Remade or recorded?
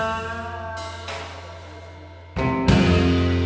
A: recorded